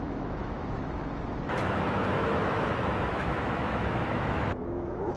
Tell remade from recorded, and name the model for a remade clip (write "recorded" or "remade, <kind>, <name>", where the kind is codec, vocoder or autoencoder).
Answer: remade, autoencoder, DAC-VAE